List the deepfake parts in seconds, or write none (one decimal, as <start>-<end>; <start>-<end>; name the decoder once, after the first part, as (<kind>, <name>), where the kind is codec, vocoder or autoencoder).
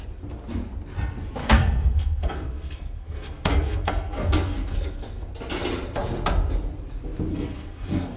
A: 1.4-5.3 (codec, SNAC); 7.3-8.2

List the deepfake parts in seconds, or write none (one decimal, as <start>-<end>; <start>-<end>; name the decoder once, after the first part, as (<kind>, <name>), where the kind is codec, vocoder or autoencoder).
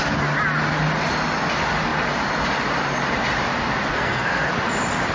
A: 3.9-4.5 (codec, SNAC)